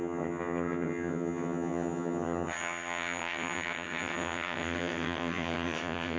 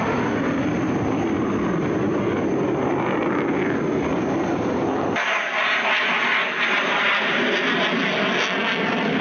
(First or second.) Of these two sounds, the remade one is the first